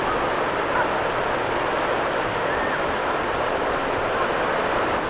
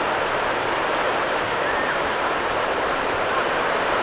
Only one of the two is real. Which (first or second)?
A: first